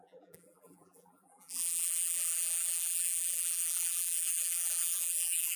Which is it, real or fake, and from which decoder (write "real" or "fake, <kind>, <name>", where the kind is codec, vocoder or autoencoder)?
fake, vocoder, BigVGAN v2